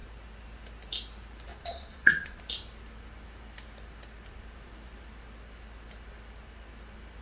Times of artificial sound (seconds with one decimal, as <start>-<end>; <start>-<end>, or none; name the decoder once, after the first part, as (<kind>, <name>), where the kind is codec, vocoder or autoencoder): 1.5-2.4 (vocoder, Vocos)